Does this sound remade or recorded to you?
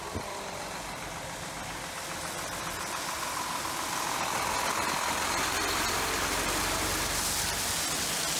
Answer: recorded